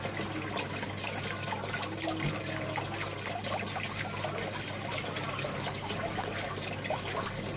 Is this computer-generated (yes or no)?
no